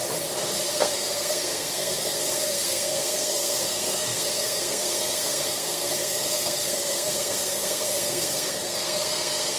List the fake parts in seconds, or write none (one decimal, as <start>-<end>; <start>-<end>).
0.7-9.6